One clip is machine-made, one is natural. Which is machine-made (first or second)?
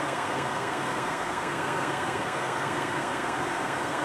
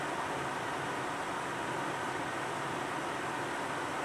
first